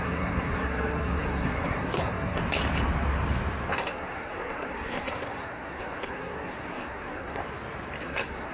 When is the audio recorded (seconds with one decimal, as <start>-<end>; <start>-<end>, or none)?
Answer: 2.4-3.7; 7.4-8.0